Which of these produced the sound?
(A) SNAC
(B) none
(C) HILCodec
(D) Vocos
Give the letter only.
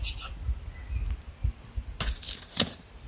B